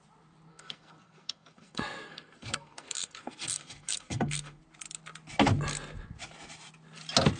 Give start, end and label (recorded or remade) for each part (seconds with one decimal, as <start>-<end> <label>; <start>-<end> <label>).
0.0-0.5 recorded; 0.5-4.6 remade; 4.6-7.4 recorded